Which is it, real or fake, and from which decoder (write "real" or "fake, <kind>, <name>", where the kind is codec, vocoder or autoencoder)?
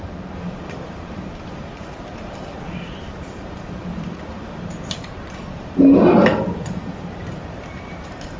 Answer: fake, vocoder, BigVGAN v2